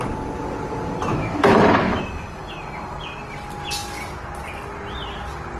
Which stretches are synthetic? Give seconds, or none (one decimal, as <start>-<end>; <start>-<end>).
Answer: 1.1-2.0